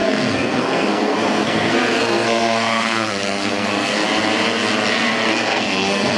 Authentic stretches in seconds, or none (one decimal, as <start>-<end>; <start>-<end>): 4.0-4.9